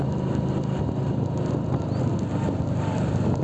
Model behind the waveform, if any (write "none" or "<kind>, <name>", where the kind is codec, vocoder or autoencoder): none